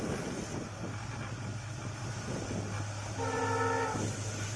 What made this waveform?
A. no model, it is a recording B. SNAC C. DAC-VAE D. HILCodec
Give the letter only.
A